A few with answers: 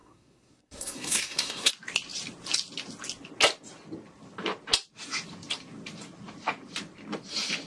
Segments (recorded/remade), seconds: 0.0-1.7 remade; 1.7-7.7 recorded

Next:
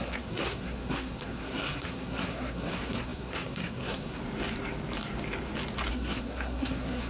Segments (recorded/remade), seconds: 0.0-4.2 remade; 4.2-5.9 recorded; 5.9-7.1 remade

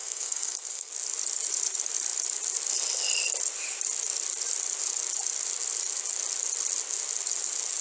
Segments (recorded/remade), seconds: 0.0-0.9 remade; 0.9-7.8 recorded

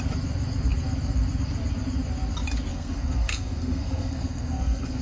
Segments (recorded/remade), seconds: 0.0-2.7 recorded; 2.7-5.0 remade